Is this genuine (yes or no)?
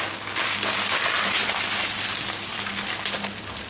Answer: yes